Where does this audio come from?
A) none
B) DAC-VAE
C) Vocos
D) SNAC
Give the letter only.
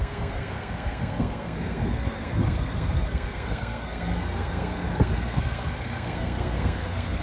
D